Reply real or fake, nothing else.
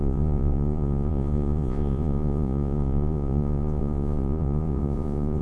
fake